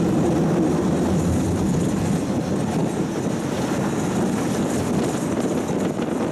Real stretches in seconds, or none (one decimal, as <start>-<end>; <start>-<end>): 0.0-6.3